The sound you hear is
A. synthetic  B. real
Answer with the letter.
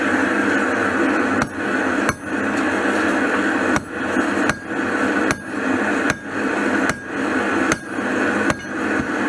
B